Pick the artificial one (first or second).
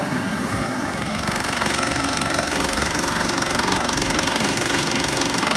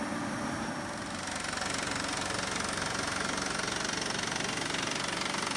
first